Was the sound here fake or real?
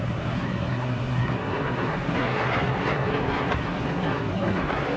fake